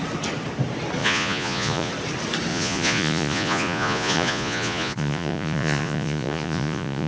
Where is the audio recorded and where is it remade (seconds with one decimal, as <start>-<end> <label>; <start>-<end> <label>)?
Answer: 0.0-1.0 recorded; 1.0-1.9 remade; 1.9-2.5 recorded; 2.5-7.1 remade